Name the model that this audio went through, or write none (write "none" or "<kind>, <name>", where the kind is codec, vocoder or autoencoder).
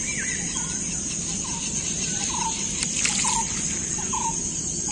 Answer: none